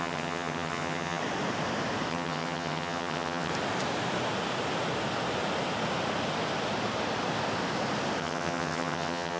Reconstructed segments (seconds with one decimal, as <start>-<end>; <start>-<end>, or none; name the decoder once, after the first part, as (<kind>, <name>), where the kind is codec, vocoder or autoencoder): 0.0-1.2 (vocoder, HiFi-GAN); 2.1-3.5; 8.2-9.4